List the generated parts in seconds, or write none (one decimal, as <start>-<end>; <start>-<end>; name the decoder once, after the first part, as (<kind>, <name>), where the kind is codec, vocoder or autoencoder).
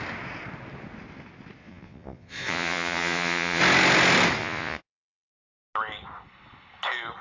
1.6-3.6 (vocoder, Vocos); 4.4-5.3